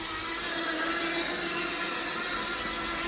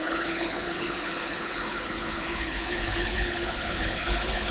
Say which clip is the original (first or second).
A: first